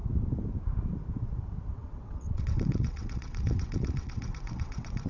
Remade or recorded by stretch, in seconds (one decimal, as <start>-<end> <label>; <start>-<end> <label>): 0.0-1.7 recorded; 1.7-5.1 remade